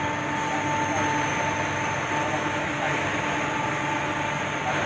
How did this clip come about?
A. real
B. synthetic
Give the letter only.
A